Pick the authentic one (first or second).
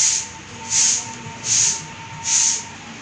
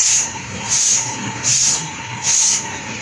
first